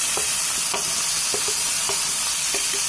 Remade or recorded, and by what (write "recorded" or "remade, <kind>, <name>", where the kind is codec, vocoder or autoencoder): recorded